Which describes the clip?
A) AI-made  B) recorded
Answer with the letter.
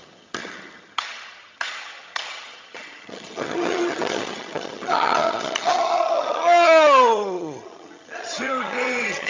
A